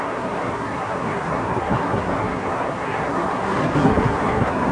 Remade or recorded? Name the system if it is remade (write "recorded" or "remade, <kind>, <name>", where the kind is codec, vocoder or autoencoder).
remade, codec, SNAC